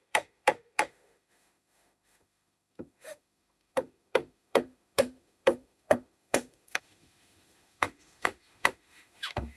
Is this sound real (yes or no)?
no